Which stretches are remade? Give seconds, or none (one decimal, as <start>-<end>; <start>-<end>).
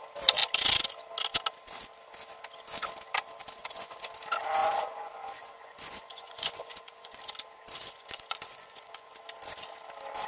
3.6-4.1; 4.6-7.2; 7.8-9.1